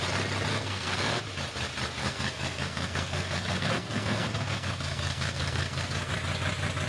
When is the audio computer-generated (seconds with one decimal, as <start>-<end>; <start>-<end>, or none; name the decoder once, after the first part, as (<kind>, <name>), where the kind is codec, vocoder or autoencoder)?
0.5-1.2 (codec, SNAC); 2.0-6.1